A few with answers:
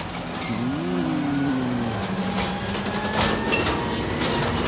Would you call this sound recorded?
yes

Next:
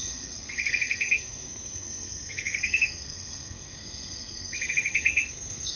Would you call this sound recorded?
no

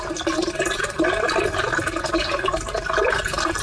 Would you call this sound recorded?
yes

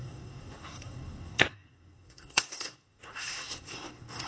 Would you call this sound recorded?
no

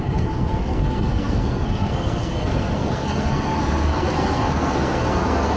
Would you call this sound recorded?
no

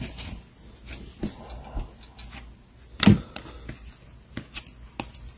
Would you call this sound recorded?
yes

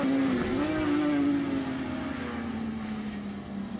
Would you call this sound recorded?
yes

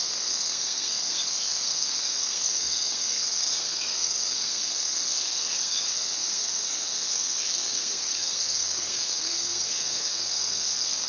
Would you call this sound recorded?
no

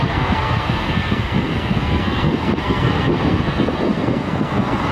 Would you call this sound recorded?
no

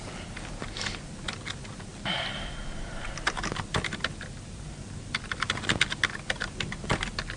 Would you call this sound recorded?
yes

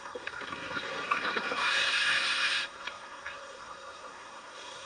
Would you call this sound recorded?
no